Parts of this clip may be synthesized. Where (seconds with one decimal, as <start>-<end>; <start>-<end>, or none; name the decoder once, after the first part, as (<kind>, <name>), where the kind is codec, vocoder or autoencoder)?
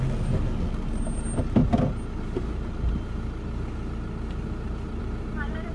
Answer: none